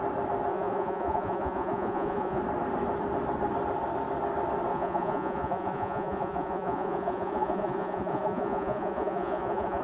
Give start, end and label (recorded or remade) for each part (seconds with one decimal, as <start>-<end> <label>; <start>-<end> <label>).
0.0-0.5 recorded; 0.5-2.4 remade; 2.4-4.7 recorded; 4.7-9.8 remade